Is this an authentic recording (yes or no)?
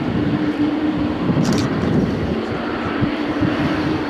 yes